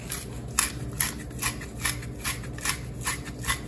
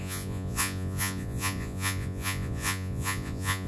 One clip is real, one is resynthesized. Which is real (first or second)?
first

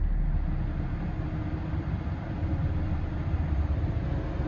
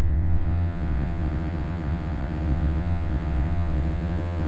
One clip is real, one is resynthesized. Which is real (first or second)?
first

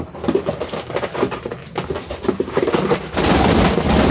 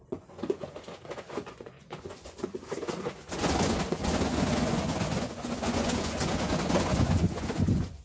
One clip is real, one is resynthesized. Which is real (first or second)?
first